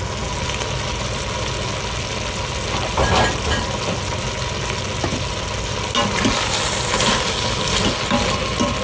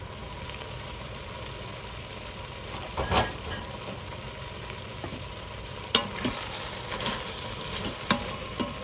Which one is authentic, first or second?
first